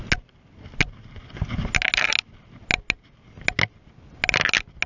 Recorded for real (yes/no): yes